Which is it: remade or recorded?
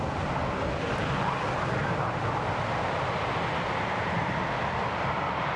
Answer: recorded